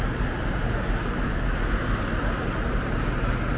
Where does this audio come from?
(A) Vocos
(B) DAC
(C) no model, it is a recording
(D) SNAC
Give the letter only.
C